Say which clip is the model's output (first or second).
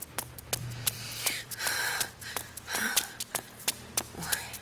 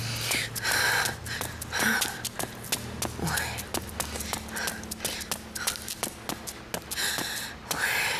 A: first